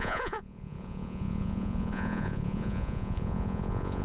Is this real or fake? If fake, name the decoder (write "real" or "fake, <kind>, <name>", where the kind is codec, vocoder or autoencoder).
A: fake, vocoder, Vocos